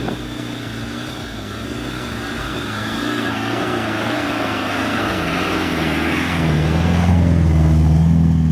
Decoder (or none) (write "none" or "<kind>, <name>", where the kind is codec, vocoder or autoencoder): codec, SNAC